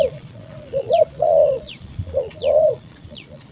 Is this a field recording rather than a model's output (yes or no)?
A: no